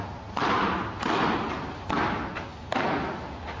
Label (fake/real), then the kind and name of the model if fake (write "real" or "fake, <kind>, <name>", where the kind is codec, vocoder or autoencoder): real